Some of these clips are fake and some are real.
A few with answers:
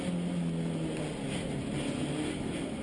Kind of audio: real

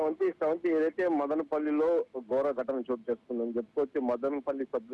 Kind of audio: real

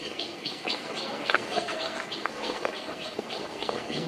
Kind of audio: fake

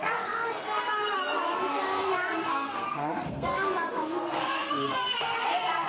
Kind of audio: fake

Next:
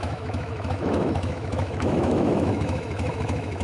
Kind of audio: fake